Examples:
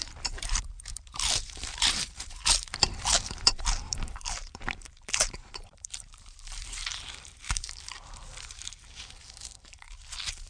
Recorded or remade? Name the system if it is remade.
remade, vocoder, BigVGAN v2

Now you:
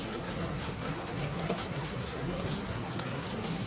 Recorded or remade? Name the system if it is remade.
remade, codec, SNAC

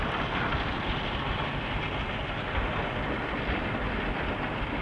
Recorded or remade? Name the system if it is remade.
recorded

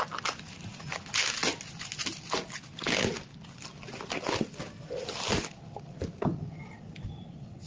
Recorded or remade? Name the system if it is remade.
recorded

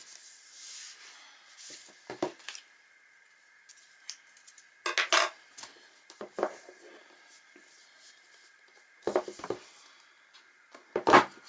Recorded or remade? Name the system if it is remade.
recorded